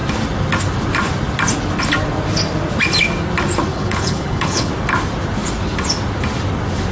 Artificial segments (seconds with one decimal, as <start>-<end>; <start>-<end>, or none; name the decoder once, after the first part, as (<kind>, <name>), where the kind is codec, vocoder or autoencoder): 3.7-4.7 (codec, HILCodec)